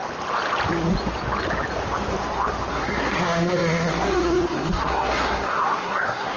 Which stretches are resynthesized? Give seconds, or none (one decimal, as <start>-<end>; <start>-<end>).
2.7-6.4